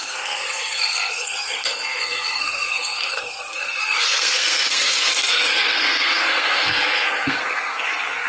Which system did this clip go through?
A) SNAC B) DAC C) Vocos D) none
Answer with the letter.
A